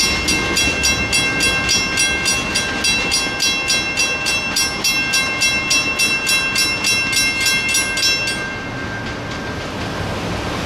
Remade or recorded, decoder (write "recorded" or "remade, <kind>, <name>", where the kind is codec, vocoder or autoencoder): recorded